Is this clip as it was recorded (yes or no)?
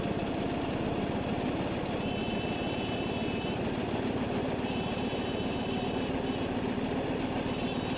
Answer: yes